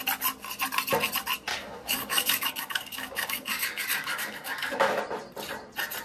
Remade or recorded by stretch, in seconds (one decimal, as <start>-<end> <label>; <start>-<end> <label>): 0.0-1.5 recorded; 1.5-5.0 remade; 5.0-6.0 recorded